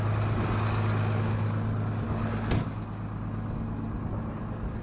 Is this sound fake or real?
real